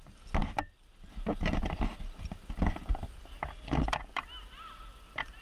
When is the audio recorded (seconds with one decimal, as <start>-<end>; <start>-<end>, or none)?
0.0-5.4